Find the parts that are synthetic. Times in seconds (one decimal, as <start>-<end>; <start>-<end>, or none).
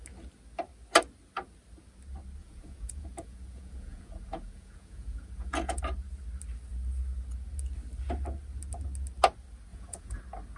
2.4-5.8; 9.7-10.2